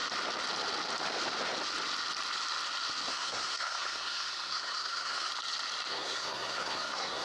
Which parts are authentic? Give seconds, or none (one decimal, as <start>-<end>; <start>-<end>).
0.0-3.1; 5.3-5.9